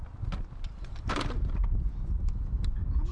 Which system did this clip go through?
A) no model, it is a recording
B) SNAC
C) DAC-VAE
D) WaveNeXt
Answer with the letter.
A